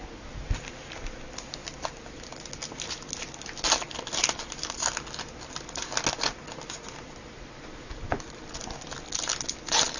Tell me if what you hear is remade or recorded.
recorded